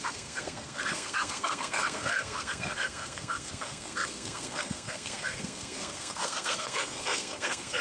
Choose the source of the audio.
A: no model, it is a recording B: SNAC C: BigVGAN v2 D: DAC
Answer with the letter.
B